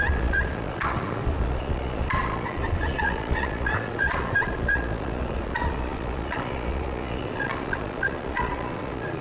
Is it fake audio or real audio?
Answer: fake